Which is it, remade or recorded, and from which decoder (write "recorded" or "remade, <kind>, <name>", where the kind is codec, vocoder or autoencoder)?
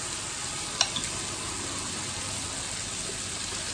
recorded